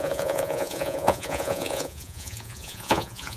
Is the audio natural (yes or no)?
no